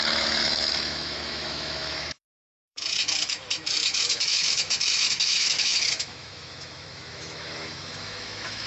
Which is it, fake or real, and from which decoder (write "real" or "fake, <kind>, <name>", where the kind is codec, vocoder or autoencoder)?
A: fake, autoencoder, DAC-VAE